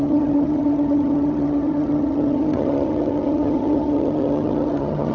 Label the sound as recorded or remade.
remade